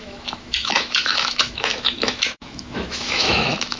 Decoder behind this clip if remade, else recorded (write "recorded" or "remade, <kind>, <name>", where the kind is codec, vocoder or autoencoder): remade, autoencoder, DAC-VAE